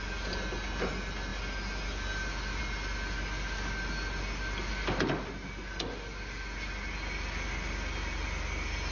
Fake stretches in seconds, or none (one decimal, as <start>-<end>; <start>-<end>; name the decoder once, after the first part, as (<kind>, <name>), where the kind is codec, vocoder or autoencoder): none